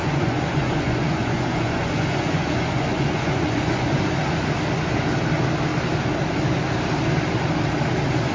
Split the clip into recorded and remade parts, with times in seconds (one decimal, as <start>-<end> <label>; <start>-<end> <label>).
0.0-4.1 remade; 4.1-8.3 recorded